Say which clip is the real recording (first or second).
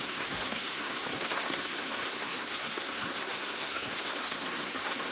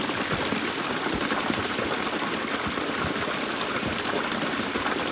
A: second